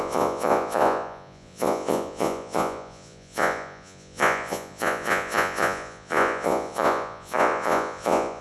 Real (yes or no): no